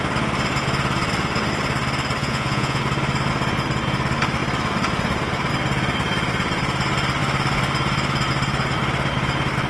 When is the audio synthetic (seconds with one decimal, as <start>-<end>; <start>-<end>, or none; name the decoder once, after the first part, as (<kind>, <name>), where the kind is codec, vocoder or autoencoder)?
2.2-2.8 (vocoder, Vocos)